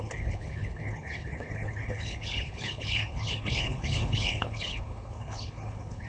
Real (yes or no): no